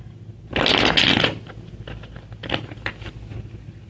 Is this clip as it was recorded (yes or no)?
yes